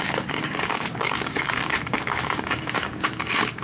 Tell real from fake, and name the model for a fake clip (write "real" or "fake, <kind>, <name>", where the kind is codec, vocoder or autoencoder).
fake, codec, DAC